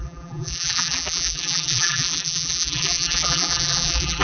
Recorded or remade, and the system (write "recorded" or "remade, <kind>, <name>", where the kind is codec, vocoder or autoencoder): remade, vocoder, BigVGAN v2